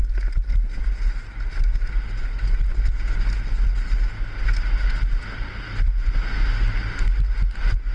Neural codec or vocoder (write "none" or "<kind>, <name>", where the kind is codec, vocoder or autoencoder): none